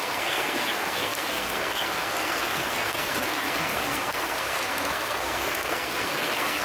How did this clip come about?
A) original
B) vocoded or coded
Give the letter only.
B